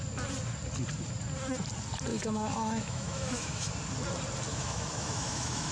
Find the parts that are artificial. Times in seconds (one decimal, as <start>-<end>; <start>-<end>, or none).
2.1-3.7; 4.5-5.7

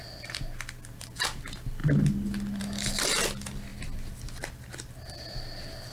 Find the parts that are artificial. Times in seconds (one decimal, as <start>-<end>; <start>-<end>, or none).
none

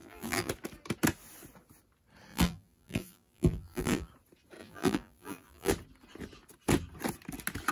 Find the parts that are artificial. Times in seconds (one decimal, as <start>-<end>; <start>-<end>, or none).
0.0-0.5; 2.3-4.1; 4.6-5.7

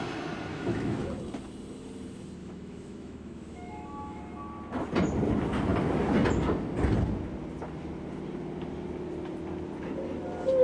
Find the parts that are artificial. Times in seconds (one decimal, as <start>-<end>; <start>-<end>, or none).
0.5-1.1; 2.4-4.2

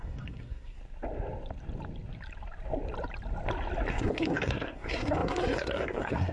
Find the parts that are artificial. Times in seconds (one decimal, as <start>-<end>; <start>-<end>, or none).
0.0-0.8; 3.9-6.3

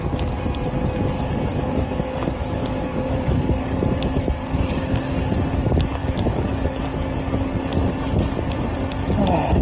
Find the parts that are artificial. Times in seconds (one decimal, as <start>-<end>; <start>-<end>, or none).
1.5-3.8; 6.0-6.8

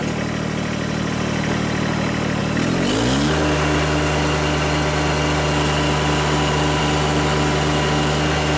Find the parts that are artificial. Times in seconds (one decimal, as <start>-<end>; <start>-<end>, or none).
none

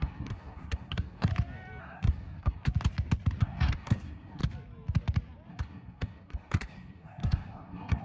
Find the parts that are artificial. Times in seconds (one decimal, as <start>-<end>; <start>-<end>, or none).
0.0-1.3; 1.8-2.7; 3.4-4.4; 5.5-8.0